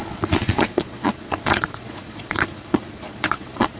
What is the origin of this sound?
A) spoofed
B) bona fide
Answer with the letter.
A